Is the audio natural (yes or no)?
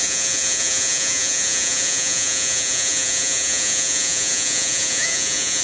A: no